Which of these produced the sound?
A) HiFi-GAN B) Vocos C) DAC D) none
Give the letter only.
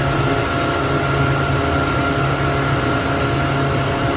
D